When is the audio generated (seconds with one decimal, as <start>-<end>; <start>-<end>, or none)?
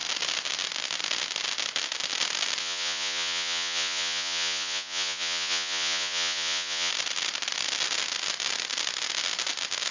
2.6-6.9